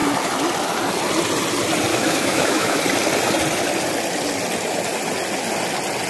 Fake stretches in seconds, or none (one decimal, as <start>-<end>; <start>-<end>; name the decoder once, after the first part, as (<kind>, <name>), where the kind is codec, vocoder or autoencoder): 1.9-2.8 (autoencoder, DAC-VAE)